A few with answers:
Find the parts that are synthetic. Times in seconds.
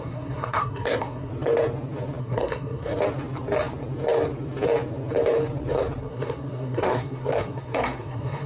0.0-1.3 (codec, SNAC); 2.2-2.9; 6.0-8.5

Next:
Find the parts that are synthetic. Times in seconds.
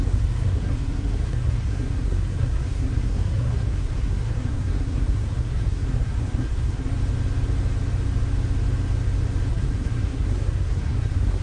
0.0-6.9 (codec, SNAC); 9.5-11.4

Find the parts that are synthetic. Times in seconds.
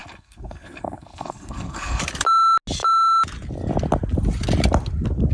0.0-2.0 (codec, SNAC)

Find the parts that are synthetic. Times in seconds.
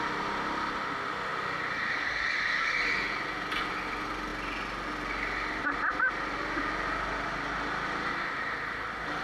none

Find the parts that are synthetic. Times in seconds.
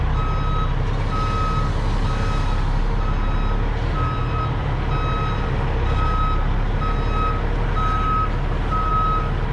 none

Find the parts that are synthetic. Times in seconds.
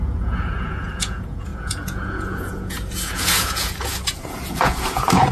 0.0-5.3 (vocoder, Vocos)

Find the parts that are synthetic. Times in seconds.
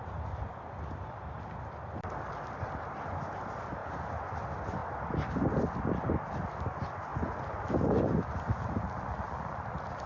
none